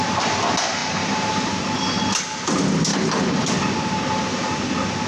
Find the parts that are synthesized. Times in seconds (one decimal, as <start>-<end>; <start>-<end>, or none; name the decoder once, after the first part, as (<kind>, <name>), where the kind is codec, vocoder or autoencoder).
none